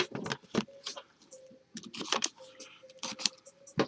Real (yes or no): yes